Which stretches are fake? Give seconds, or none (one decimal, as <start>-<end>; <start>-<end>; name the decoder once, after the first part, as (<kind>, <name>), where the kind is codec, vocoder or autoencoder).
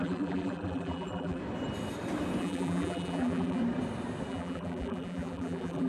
0.0-1.4 (vocoder, BigVGAN v2); 2.4-3.6; 4.3-5.9